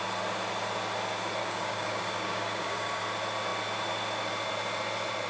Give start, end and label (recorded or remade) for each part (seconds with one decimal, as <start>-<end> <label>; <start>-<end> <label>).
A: 0.0-1.4 recorded; 1.4-3.0 remade; 3.0-5.3 recorded